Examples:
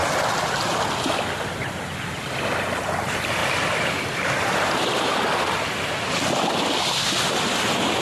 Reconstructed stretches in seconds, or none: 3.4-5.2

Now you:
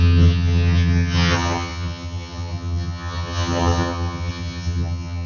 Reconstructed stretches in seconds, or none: 0.0-5.3

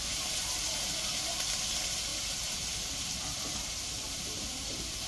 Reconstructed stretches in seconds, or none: 0.0-1.6; 2.1-5.1

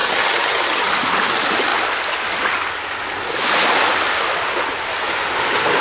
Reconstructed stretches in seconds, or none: 0.0-0.9

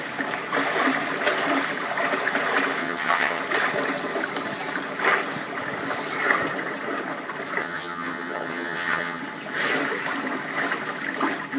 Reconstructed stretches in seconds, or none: 2.8-3.4; 7.6-9.2